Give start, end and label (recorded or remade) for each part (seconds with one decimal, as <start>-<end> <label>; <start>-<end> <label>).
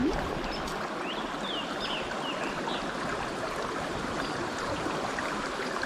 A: 0.0-3.5 recorded; 3.5-5.9 remade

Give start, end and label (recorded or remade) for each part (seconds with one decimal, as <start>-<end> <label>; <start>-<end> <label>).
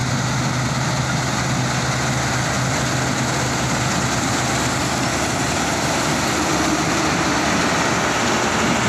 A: 0.0-8.9 recorded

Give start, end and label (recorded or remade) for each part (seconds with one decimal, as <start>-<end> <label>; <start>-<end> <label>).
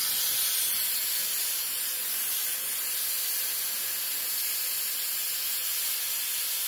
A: 0.0-1.2 recorded; 1.2-2.5 remade; 2.5-6.7 recorded